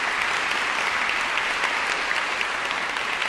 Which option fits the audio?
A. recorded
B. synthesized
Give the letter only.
A